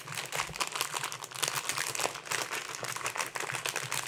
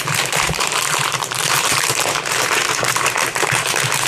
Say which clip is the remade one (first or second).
second